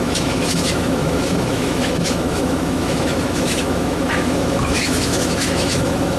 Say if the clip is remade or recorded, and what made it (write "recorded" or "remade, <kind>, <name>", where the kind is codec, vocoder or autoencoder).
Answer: remade, autoencoder, DAC-VAE